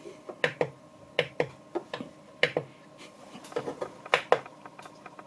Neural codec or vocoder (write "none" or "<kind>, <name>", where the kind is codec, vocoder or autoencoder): none